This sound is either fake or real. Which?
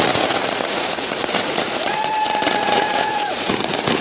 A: fake